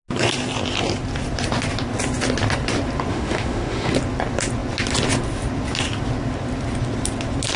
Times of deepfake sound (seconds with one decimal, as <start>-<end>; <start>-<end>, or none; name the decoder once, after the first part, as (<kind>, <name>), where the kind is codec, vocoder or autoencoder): 3.1-3.9 (autoencoder, DAC-VAE)